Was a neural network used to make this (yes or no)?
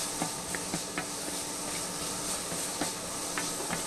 no